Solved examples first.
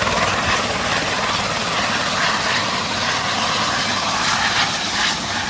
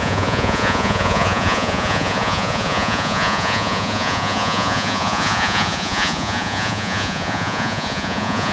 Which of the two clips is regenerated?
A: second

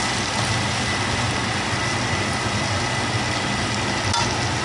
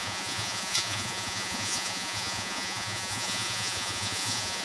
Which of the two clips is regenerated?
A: second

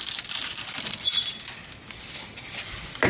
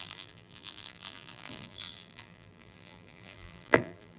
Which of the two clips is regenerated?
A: second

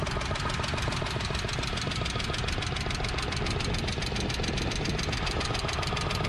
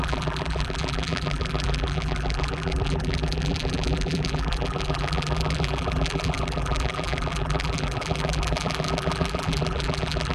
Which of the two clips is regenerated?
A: second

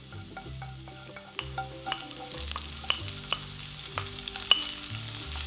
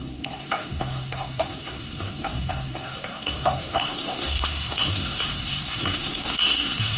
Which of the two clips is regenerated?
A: second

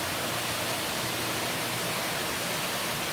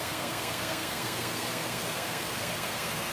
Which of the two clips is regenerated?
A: second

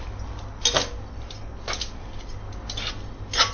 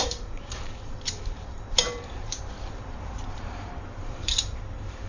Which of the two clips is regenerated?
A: second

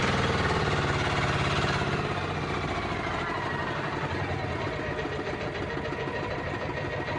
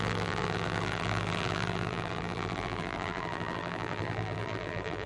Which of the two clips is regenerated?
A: second